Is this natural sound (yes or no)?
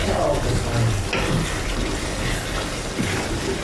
yes